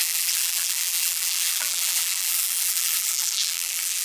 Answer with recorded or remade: remade